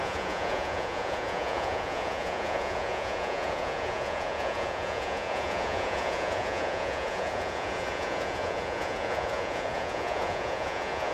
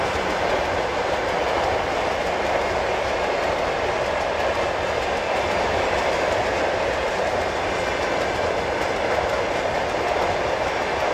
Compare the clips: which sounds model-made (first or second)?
first